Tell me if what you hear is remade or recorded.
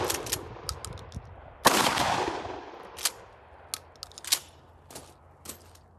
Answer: recorded